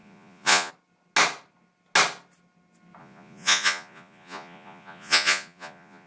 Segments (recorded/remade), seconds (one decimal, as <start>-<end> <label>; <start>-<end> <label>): 0.0-0.7 remade; 0.7-3.0 recorded; 3.0-6.1 remade